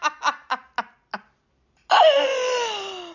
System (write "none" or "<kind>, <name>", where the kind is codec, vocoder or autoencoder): none